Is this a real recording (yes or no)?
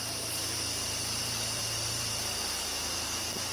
no